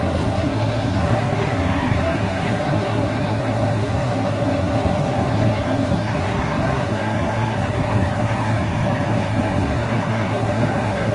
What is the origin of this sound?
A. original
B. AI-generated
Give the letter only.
B